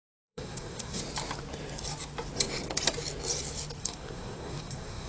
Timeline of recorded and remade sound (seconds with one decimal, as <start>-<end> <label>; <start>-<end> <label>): 0.0-1.0 remade; 1.0-3.8 recorded; 3.8-5.1 remade